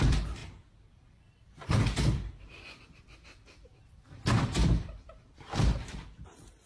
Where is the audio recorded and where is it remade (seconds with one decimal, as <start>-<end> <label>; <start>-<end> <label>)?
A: 0.0-6.7 remade